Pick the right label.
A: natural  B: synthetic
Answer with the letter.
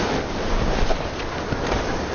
A